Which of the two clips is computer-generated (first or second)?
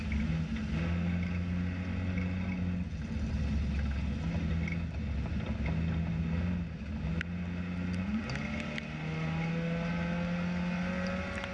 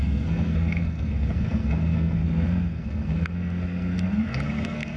second